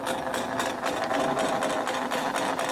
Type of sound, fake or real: real